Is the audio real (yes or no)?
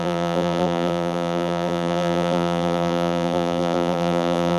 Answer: no